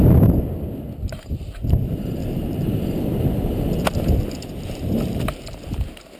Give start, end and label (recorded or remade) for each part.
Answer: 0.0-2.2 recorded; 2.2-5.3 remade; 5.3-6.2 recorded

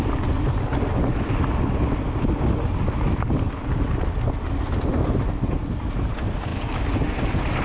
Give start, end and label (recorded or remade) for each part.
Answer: 0.0-7.6 recorded

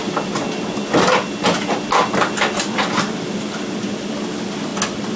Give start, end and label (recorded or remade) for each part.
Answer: 0.0-5.2 recorded

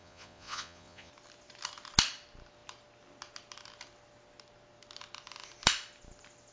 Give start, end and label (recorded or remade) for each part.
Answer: 0.0-1.1 remade; 1.1-6.5 recorded

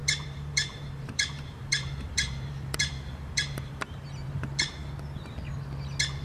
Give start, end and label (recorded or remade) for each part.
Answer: 0.0-4.8 remade; 4.8-6.2 recorded

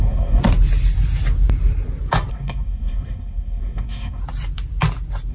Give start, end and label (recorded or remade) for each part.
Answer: 0.0-0.4 remade; 0.4-2.3 recorded; 2.3-4.2 remade; 4.2-5.3 recorded